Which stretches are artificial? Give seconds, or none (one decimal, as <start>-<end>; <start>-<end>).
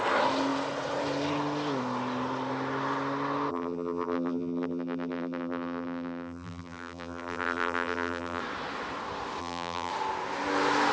3.5-8.4; 9.4-9.9